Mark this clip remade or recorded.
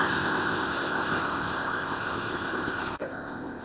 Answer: remade